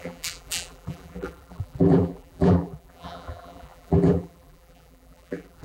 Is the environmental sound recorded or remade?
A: remade